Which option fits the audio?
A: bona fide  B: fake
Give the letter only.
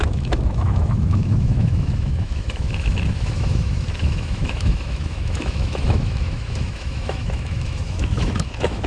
B